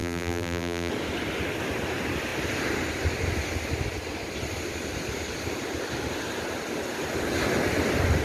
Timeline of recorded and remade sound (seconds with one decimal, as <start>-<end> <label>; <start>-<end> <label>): 0.0-0.9 remade; 0.9-8.2 recorded